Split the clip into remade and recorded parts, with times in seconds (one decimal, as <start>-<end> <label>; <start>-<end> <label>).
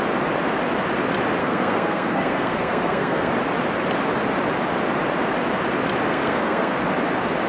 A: 0.0-1.4 recorded; 1.4-3.3 remade; 3.3-6.1 recorded; 6.1-6.8 remade; 6.8-7.5 recorded